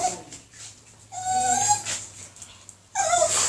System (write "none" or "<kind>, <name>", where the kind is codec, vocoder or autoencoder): none